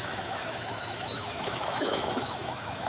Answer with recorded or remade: remade